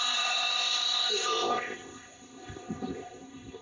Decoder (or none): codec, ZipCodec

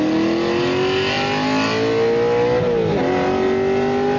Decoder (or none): none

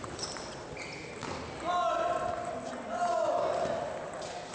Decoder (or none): none